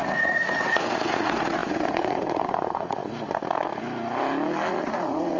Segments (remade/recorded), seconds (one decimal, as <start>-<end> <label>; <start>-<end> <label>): 0.0-3.0 remade; 3.0-4.7 recorded; 4.7-5.4 remade